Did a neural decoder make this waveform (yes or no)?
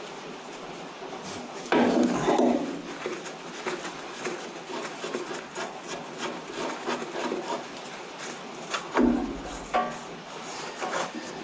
no